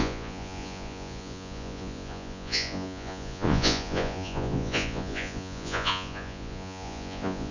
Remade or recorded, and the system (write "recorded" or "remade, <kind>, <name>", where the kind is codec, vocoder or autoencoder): remade, vocoder, Vocos